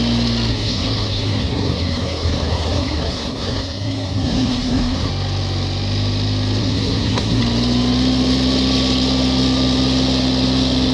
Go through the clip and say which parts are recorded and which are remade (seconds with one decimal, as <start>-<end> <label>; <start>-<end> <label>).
0.0-0.5 recorded; 0.5-5.1 remade; 5.1-6.6 recorded; 6.6-7.4 remade; 7.4-10.9 recorded